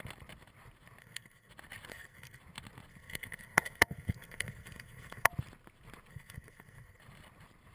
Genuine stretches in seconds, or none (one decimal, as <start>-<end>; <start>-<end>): 0.0-1.0; 1.5-1.9; 2.4-2.9; 5.3-6.1; 7.0-7.7